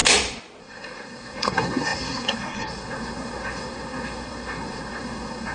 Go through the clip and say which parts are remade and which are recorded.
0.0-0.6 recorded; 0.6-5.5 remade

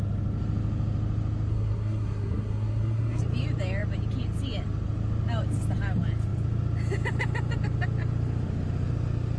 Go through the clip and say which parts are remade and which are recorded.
0.0-1.5 recorded; 1.5-3.2 remade; 3.2-9.4 recorded

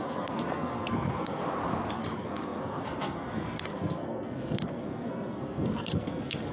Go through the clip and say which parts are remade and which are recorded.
0.0-1.4 remade; 1.4-1.9 recorded; 1.9-6.5 remade

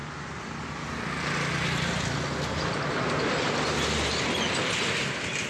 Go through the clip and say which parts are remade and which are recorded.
0.0-5.5 recorded

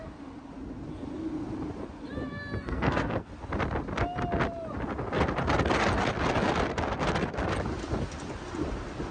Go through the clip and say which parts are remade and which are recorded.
0.0-2.6 recorded; 2.6-3.3 remade; 3.3-9.1 recorded

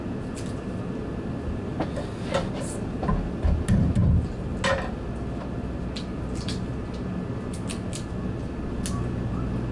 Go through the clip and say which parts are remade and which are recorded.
0.0-9.7 recorded